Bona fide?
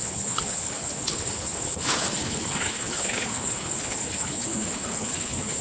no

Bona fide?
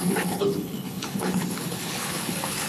no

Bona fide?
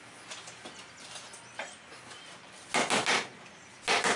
yes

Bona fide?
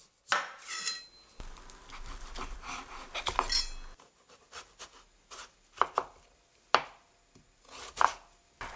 yes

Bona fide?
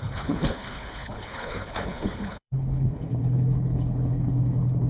no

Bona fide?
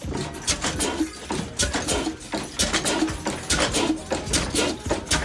yes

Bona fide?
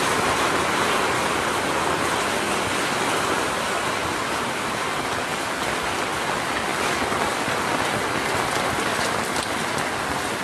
yes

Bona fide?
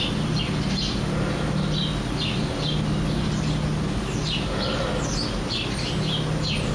yes